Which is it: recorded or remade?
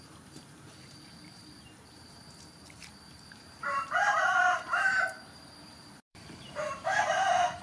remade